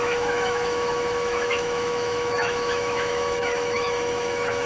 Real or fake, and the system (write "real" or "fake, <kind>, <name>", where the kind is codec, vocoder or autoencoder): fake, autoencoder, DAC-VAE